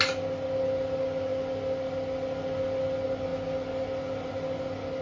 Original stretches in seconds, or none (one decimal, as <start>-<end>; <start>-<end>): 0.0-5.0